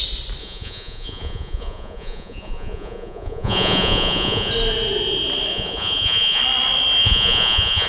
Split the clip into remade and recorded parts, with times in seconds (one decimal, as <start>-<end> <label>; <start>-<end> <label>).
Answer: 0.0-0.4 recorded; 0.4-4.5 remade; 4.5-5.5 recorded; 5.5-6.4 remade; 6.4-7.0 recorded; 7.0-7.9 remade